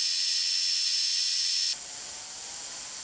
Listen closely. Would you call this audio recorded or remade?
recorded